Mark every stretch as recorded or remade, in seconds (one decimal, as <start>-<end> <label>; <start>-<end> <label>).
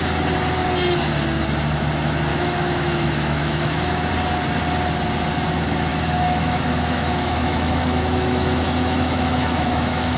0.0-2.3 recorded; 2.3-4.1 remade; 4.1-5.9 recorded; 5.9-10.2 remade